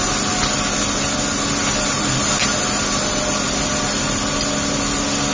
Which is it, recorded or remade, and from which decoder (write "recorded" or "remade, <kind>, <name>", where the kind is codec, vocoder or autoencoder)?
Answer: recorded